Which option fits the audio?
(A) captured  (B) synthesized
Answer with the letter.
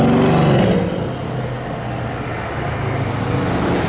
A